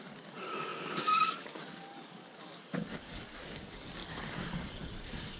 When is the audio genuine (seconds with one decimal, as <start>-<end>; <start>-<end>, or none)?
none